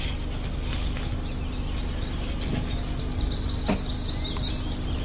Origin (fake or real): real